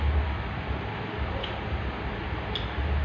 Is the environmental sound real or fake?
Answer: real